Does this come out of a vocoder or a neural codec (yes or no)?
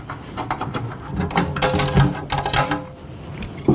no